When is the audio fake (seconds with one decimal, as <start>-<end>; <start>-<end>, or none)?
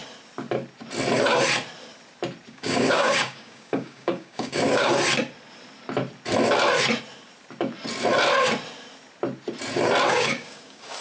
2.5-4.9; 10.1-11.0